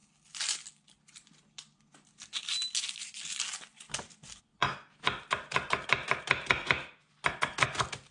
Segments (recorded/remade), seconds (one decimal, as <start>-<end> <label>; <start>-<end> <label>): 0.0-8.1 recorded